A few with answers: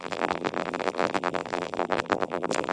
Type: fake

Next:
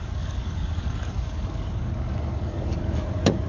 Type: fake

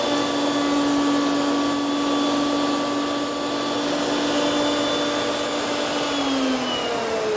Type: real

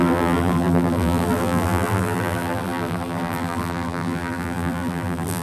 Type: fake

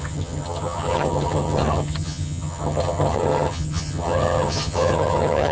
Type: fake